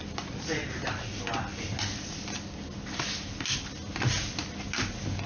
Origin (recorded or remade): recorded